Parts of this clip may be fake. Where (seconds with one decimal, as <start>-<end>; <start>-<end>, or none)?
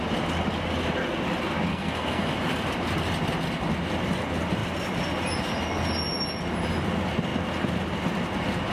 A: 1.7-2.3